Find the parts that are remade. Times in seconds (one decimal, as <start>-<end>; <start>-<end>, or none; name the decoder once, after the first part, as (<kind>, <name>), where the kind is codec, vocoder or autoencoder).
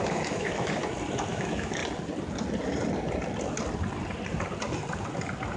0.0-0.8 (autoencoder, DAC-VAE); 1.3-1.8